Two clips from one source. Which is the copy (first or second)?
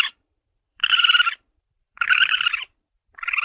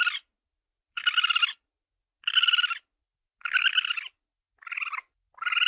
first